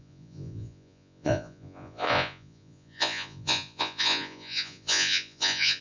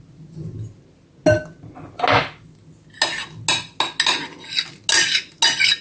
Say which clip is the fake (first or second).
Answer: first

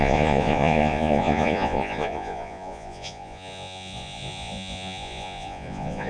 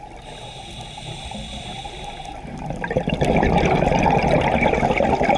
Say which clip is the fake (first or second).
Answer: first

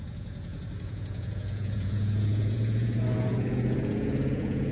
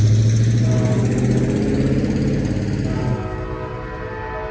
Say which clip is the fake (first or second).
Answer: first